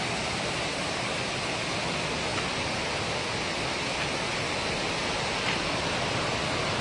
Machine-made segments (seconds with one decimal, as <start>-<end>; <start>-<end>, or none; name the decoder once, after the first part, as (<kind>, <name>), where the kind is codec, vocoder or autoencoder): none